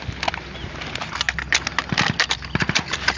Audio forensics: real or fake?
real